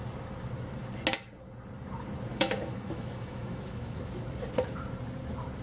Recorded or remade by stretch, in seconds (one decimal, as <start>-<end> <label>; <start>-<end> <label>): 0.0-2.3 recorded; 2.3-4.0 remade; 4.0-5.6 recorded